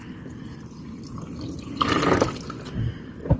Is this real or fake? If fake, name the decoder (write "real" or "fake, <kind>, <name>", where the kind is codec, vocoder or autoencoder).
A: real